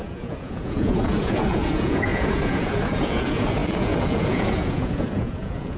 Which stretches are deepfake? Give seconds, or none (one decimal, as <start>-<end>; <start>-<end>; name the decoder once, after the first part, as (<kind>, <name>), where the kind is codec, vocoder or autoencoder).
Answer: 0.0-5.8 (vocoder, Vocos)